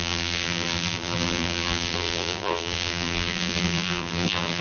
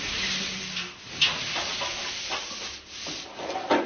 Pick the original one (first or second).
second